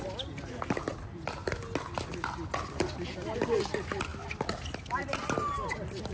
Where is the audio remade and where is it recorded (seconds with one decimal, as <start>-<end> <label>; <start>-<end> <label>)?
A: 0.0-6.1 recorded